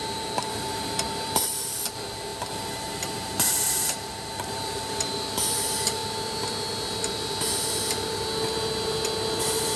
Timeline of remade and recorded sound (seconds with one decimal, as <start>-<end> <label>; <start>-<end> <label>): 0.0-6.0 remade; 6.0-9.4 recorded; 9.4-9.8 remade